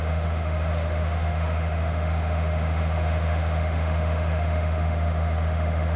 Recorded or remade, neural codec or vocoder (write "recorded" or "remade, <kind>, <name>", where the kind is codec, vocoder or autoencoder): remade, autoencoder, DAC-VAE